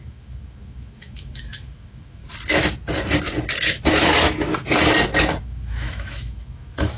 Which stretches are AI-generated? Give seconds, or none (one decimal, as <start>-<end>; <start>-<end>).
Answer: 0.0-2.2; 5.4-7.0